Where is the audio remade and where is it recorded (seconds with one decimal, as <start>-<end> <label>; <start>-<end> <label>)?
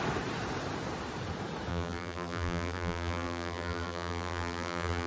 0.0-1.7 recorded; 1.7-5.1 remade